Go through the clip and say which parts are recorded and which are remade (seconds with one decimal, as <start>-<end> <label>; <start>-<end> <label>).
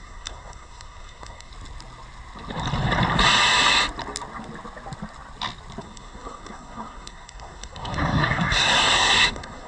0.0-1.5 remade; 1.5-5.8 recorded; 5.8-9.7 remade